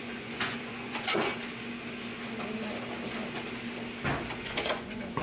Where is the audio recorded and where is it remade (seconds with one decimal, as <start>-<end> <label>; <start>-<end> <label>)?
0.0-1.3 remade; 1.3-4.4 recorded; 4.4-5.2 remade